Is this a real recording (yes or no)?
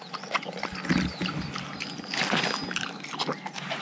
yes